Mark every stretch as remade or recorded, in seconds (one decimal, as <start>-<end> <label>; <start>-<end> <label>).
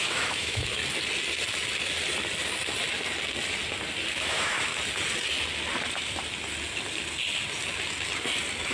0.0-0.8 remade; 0.8-4.1 recorded; 4.1-4.7 remade; 4.7-8.7 recorded